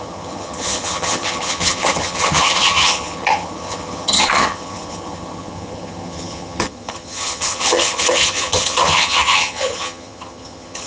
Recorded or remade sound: remade